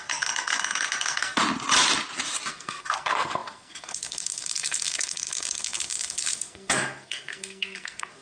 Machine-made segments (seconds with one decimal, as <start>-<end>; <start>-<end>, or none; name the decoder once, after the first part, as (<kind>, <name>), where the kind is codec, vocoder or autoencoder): 0.0-1.4 (codec, SNAC); 2.5-8.2